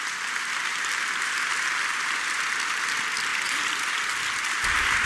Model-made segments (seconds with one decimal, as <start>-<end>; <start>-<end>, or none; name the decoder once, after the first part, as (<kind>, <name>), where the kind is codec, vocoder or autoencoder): none